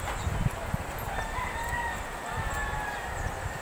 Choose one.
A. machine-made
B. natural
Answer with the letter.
B